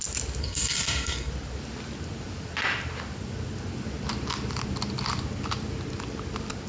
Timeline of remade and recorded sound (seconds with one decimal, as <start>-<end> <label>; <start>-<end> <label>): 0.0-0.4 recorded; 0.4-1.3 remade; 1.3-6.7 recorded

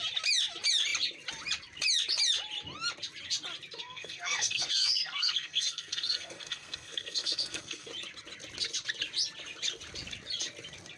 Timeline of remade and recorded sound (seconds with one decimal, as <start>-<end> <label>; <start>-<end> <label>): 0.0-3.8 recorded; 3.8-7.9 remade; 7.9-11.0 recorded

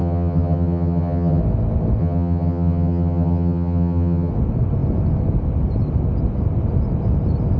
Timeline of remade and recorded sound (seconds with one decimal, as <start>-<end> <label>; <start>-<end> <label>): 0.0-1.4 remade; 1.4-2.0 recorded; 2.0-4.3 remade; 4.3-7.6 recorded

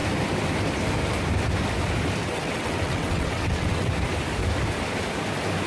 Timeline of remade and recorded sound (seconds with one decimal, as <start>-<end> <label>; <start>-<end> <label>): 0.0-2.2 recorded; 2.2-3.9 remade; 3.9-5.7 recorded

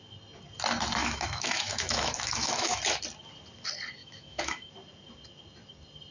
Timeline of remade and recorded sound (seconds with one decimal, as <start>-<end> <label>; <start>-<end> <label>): 0.0-1.0 recorded; 1.0-2.8 remade; 2.8-4.0 recorded; 4.0-4.7 remade; 4.7-6.1 recorded

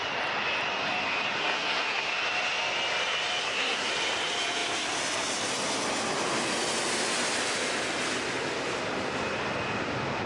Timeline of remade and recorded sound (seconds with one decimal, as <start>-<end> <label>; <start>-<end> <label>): 0.0-1.4 recorded; 1.4-2.1 remade; 2.1-3.4 recorded; 3.4-3.9 remade; 3.9-10.3 recorded

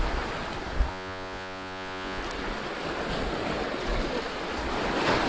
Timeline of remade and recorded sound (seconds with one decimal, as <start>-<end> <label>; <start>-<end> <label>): 0.0-0.9 recorded; 0.9-2.2 remade; 2.2-5.3 recorded